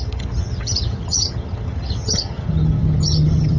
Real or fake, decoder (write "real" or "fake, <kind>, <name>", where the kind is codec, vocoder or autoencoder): fake, vocoder, HiFi-GAN